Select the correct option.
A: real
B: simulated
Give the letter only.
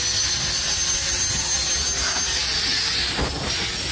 A